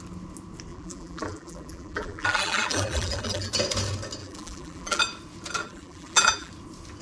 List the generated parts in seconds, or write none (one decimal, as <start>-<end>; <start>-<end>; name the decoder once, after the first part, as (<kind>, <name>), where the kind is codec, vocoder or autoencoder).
0.7-3.5 (vocoder, BigVGAN v2); 4.2-5.0; 5.6-6.5